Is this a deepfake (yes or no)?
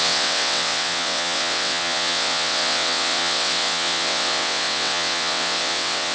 yes